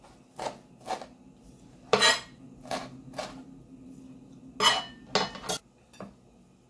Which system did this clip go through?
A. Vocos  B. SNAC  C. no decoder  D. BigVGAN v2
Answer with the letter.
C